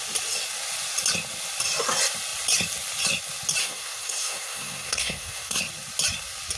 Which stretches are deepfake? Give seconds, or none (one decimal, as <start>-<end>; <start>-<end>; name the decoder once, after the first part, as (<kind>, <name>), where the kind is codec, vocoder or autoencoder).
3.6-5.6 (codec, SNAC)